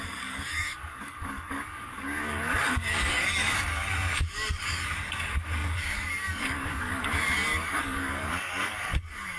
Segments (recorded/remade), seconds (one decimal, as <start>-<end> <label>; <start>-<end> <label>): 0.0-9.4 remade